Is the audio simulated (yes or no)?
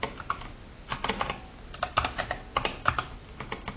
no